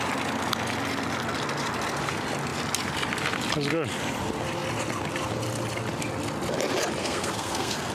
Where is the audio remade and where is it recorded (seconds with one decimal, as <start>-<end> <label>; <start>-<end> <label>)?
0.0-7.0 recorded; 7.0-7.9 remade